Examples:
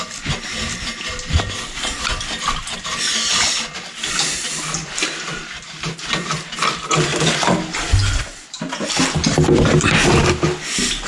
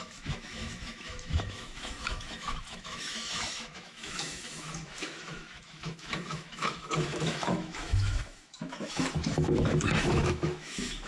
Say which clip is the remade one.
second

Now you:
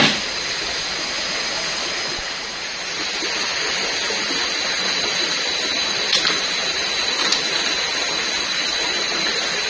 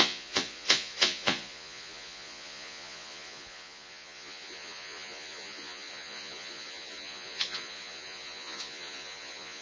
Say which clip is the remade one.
second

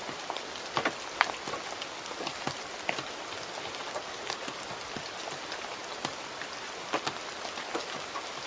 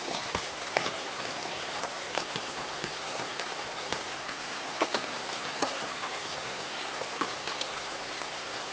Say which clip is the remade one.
second